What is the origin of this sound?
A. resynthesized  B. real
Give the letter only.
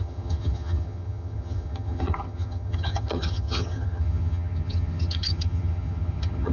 A